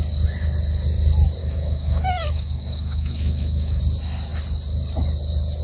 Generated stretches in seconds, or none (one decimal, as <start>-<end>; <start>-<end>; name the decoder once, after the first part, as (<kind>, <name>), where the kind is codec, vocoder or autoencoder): 1.4-3.8 (autoencoder, DAC-VAE)